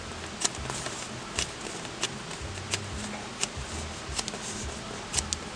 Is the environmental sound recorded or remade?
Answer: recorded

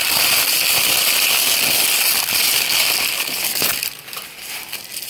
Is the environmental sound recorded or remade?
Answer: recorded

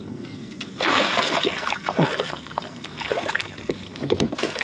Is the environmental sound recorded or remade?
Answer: remade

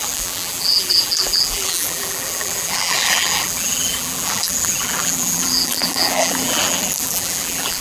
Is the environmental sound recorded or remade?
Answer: remade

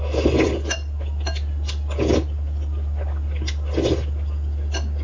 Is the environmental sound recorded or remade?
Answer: recorded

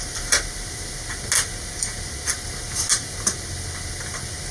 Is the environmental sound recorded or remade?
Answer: recorded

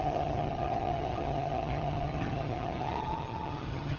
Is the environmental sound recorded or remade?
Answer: remade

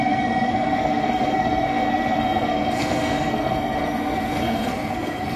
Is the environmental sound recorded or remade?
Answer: remade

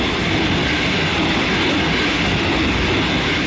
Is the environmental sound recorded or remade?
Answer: recorded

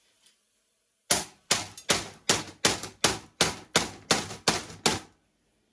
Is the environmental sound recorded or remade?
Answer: recorded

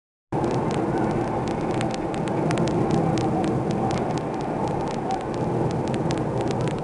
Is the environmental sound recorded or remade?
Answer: recorded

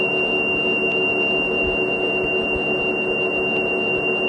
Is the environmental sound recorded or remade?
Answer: recorded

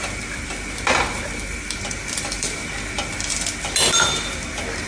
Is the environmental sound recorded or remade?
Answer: recorded